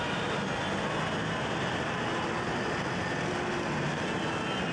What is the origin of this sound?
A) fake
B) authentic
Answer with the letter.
B